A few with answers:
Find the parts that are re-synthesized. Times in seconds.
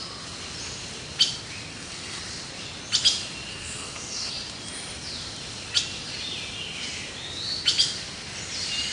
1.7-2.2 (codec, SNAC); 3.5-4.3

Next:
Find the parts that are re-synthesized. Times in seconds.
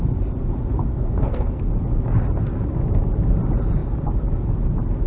0.9-1.6 (codec, SNAC)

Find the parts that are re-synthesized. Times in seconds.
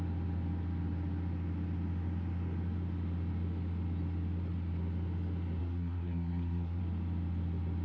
5.6-6.8 (codec, SNAC)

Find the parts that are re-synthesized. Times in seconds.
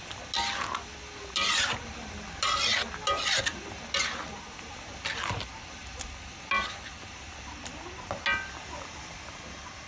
none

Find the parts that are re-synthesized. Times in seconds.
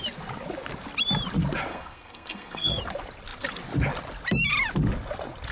1.7-2.8 (codec, SNAC)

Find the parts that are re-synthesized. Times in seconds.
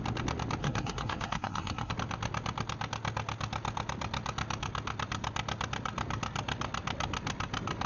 0.6-1.9 (codec, SNAC)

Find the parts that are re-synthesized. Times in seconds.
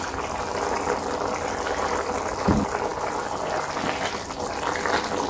none